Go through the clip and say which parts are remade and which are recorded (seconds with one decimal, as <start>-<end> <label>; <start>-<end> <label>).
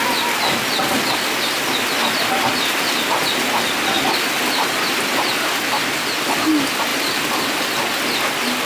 0.0-8.7 recorded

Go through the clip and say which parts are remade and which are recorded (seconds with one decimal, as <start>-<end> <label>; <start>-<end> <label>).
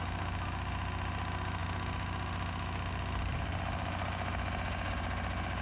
0.0-5.6 recorded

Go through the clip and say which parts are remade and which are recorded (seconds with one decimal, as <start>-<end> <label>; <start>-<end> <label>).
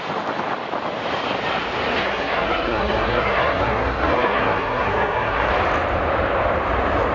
0.0-2.0 recorded; 2.0-5.5 remade; 5.5-7.1 recorded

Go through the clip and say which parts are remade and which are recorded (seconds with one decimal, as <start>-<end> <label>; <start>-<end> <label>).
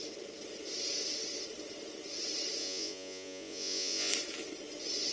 0.0-2.6 recorded; 2.6-4.1 remade; 4.1-5.1 recorded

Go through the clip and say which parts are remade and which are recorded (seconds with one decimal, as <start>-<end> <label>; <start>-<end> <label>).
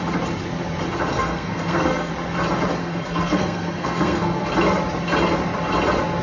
0.0-1.1 recorded; 1.1-2.1 remade; 2.1-2.8 recorded; 2.8-4.5 remade; 4.5-6.2 recorded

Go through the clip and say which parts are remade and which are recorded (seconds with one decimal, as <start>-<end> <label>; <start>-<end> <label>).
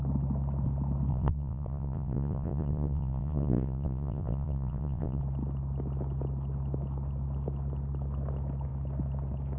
0.0-1.1 recorded; 1.1-5.2 remade; 5.2-9.6 recorded